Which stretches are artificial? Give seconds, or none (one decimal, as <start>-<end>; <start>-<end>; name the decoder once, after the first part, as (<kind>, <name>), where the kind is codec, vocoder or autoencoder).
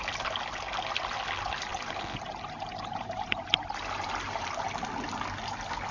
none